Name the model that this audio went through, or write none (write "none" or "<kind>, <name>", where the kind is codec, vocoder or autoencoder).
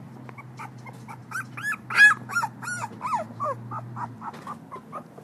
none